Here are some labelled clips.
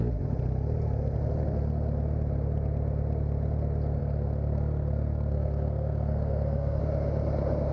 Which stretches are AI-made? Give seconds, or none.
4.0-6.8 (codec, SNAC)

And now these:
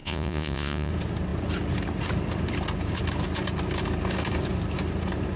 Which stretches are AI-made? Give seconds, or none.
0.0-0.9 (vocoder, Vocos)

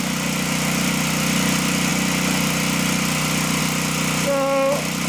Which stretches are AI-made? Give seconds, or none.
none

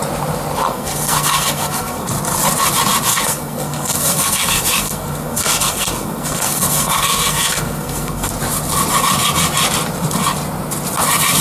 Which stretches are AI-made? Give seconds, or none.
0.6-2.1 (codec, SNAC); 3.1-8.3

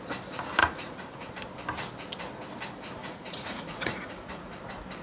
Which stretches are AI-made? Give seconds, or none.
0.6-1.3 (vocoder, Vocos); 3.0-4.6

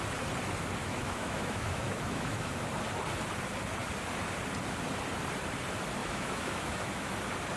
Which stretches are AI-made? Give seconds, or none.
0.8-2.6 (autoencoder, DAC-VAE); 6.0-7.1